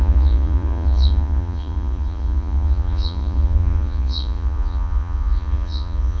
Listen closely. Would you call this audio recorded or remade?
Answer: remade